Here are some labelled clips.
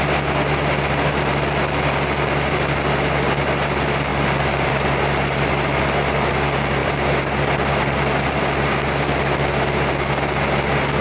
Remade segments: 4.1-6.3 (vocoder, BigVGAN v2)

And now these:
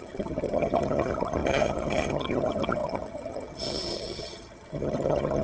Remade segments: 0.0-5.4 (vocoder, HiFi-GAN)

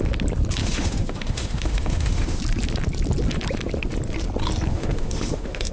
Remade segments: 0.6-2.4 (autoencoder, DAC-VAE); 4.7-5.7

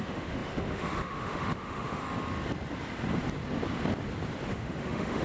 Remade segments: 0.0-2.0 (autoencoder, DAC-VAE); 4.5-5.2

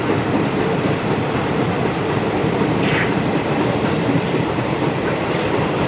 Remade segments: 2.4-5.3 (vocoder, BigVGAN v2)